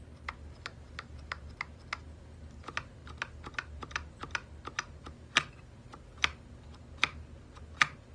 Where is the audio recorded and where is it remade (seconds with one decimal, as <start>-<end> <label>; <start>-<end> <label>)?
0.0-8.1 recorded